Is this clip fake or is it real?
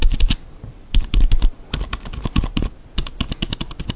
real